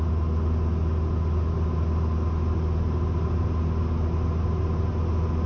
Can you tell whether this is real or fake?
real